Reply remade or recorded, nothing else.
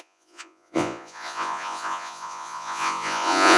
remade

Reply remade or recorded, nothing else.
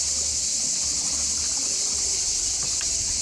recorded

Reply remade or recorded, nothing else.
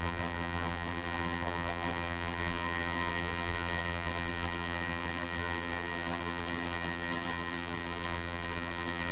remade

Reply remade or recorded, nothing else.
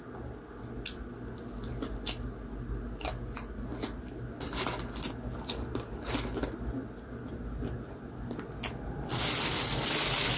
recorded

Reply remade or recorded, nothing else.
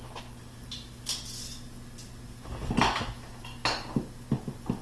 recorded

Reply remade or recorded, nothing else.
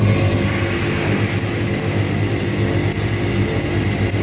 recorded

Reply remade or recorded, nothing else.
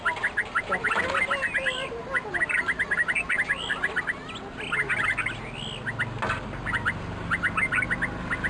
recorded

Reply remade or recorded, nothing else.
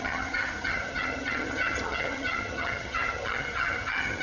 remade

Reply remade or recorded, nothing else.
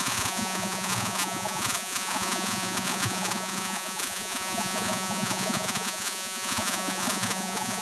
remade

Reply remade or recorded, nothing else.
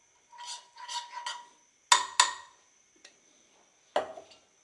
recorded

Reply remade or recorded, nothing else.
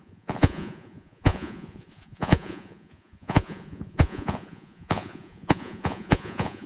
remade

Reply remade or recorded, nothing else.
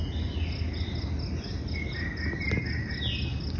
recorded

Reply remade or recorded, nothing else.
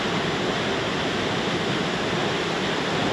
recorded